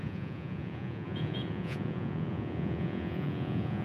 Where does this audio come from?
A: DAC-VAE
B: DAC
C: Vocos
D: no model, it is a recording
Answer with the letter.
C